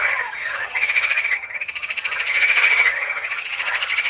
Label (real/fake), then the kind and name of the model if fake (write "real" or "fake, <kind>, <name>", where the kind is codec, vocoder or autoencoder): fake, vocoder, HiFi-GAN